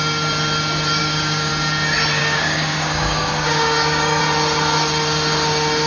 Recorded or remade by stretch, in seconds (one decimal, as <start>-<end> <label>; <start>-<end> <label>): 0.0-1.0 recorded; 1.0-1.5 remade; 1.5-2.2 recorded; 2.2-4.2 remade; 4.2-5.9 recorded

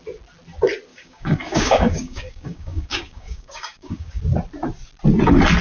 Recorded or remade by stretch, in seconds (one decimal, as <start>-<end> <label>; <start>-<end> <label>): 0.0-0.9 recorded; 0.9-4.2 remade; 4.2-5.6 recorded

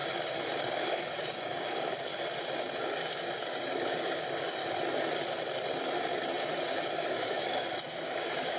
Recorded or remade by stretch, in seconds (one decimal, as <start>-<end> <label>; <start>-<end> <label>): 0.0-0.6 recorded; 0.6-2.1 remade; 2.1-2.8 recorded; 2.8-4.6 remade; 4.6-6.9 recorded; 6.9-8.6 remade